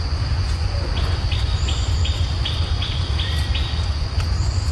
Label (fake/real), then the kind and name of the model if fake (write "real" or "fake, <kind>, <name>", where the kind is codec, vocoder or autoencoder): fake, vocoder, Vocos